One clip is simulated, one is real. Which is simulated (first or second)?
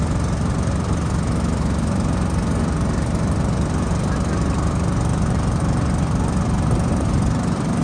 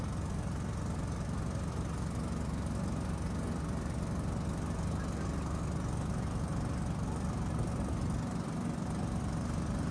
first